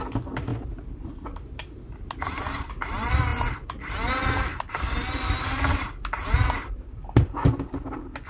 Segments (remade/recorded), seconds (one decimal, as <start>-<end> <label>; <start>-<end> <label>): 0.0-8.3 recorded